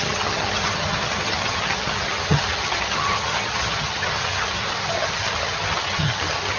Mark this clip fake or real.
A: fake